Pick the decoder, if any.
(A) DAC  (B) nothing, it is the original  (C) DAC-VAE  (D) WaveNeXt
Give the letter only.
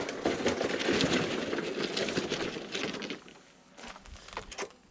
B